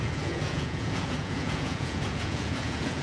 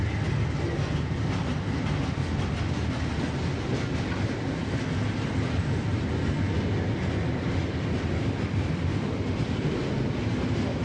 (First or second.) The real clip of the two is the second